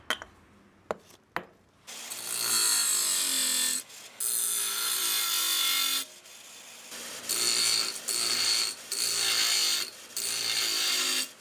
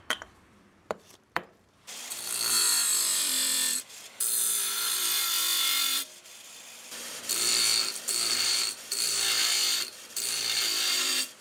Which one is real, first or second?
first